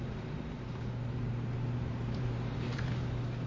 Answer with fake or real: fake